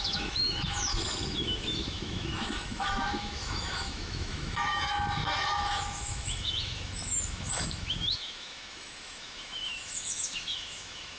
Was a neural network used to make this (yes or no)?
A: yes